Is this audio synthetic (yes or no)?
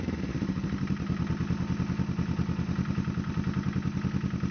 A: no